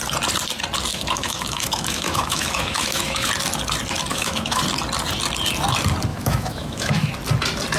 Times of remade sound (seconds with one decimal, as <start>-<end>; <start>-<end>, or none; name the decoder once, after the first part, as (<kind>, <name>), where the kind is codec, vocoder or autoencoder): 0.9-3.3 (autoencoder, DAC-VAE); 4.1-4.6; 6.1-7.1